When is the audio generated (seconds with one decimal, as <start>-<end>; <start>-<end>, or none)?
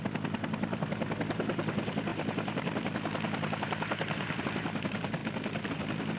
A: 0.0-5.2; 5.7-6.2